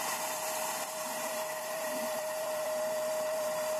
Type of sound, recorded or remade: remade